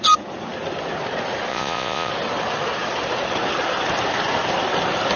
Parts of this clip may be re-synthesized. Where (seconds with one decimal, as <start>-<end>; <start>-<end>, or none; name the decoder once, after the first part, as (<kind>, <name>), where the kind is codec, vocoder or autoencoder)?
1.5-2.1 (vocoder, Vocos)